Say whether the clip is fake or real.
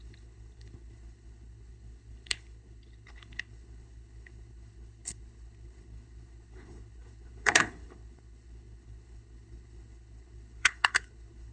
fake